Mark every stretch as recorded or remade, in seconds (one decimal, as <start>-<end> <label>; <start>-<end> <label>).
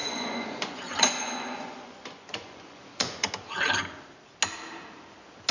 0.0-3.3 remade; 3.3-5.5 recorded